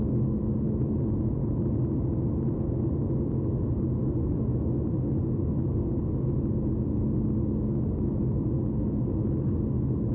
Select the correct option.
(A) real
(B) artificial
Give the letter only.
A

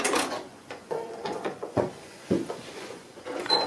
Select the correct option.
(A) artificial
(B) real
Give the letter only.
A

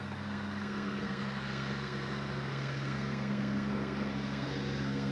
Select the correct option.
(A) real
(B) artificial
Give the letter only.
B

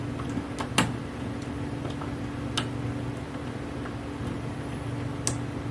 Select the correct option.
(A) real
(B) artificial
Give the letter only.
A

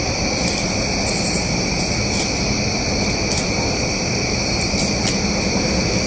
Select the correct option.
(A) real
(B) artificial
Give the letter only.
A